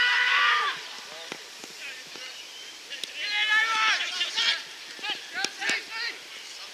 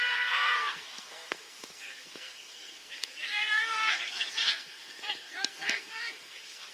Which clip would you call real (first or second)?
first